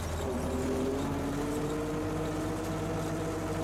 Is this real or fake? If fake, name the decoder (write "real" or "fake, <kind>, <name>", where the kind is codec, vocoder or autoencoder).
real